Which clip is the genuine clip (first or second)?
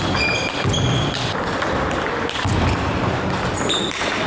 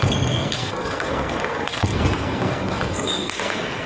first